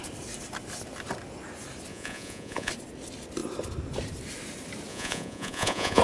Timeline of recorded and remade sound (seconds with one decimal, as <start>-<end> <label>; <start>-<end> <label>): 0.0-1.9 recorded; 1.9-2.7 remade; 2.7-4.9 recorded; 4.9-6.0 remade